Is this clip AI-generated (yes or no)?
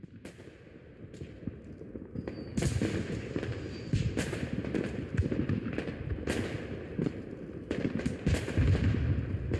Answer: no